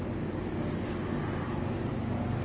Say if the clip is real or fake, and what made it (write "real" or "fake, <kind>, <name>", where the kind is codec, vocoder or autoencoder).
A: real